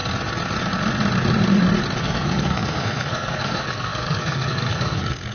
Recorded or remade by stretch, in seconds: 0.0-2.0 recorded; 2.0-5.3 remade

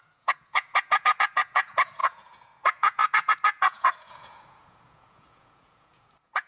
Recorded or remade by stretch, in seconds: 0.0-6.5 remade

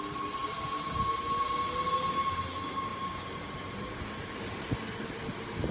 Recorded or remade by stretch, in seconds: 0.0-2.9 recorded; 2.9-4.0 remade; 4.0-5.7 recorded

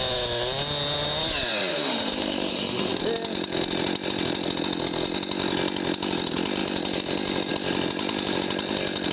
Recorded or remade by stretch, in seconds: 0.0-1.7 recorded; 1.7-3.0 remade; 3.0-9.1 recorded

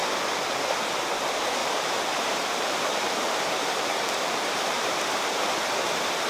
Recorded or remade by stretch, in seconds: 0.0-1.6 recorded; 1.6-5.4 remade; 5.4-6.3 recorded